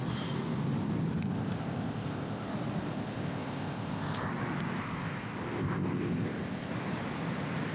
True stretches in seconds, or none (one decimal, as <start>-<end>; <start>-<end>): 0.0-1.2; 2.5-2.9; 4.3-4.8; 6.7-7.7